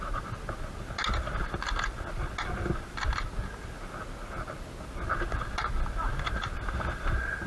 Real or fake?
real